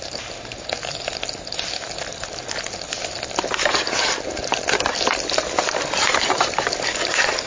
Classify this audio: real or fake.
real